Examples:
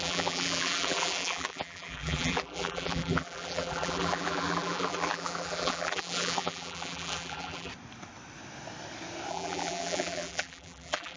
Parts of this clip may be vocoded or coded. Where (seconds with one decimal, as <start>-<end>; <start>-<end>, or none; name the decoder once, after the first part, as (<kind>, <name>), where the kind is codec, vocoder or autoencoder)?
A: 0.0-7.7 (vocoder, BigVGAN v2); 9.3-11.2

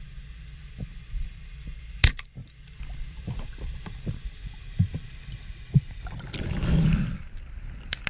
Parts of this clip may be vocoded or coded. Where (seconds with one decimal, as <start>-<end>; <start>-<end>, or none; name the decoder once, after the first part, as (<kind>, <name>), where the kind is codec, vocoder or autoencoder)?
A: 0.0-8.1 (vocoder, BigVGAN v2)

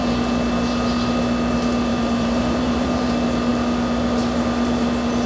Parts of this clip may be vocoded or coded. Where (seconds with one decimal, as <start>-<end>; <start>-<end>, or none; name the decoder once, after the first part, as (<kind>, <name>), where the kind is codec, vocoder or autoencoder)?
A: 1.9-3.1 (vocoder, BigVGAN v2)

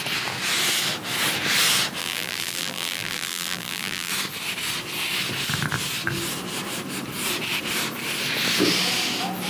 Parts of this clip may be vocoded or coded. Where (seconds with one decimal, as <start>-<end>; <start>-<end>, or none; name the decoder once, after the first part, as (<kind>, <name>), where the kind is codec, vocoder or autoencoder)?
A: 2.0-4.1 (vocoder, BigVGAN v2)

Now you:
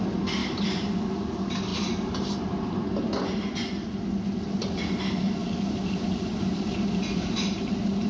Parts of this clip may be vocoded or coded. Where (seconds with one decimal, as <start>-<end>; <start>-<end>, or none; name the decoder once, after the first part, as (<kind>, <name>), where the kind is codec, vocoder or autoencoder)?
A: 0.4-0.9 (vocoder, BigVGAN v2); 1.7-2.8; 5.4-8.1

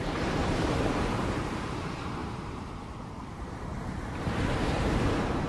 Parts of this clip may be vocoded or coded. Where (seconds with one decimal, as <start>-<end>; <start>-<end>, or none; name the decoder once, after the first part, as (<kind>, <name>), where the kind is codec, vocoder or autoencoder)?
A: 0.0-5.5 (vocoder, BigVGAN v2)

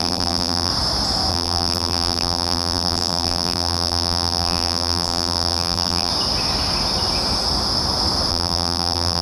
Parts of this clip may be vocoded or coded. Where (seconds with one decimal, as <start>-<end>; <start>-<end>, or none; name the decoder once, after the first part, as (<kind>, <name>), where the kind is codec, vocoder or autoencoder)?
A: 0.0-0.7 (vocoder, BigVGAN v2); 1.3-6.1; 8.3-9.2